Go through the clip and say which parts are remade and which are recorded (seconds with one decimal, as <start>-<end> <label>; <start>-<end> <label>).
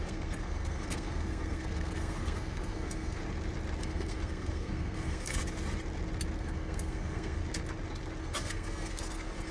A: 0.0-3.2 remade; 3.2-3.8 recorded; 3.8-5.4 remade; 5.4-6.4 recorded; 6.4-7.4 remade; 7.4-8.2 recorded; 8.2-9.5 remade